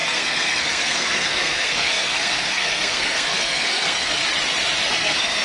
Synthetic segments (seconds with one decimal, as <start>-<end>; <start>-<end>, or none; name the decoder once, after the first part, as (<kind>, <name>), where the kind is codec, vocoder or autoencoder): 0.0-4.2 (codec, SNAC); 4.9-5.4